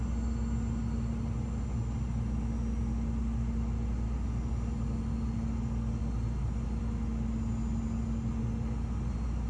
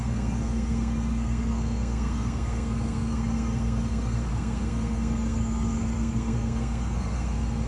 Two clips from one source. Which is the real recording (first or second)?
first